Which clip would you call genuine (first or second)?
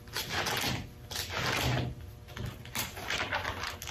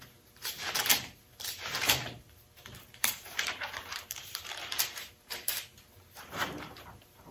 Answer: first